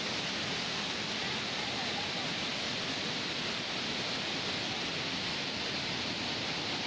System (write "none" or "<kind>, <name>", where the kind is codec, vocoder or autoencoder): none